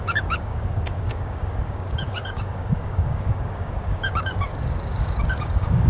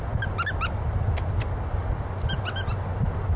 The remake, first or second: first